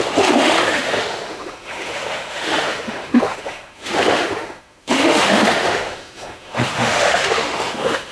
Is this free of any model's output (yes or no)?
no